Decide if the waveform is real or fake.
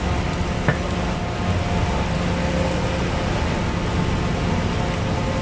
real